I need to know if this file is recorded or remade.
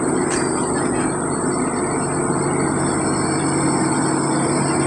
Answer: recorded